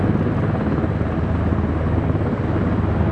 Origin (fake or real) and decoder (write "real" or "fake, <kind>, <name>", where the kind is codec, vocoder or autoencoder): real